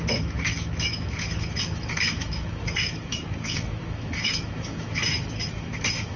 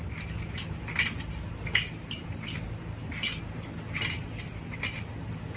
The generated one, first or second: first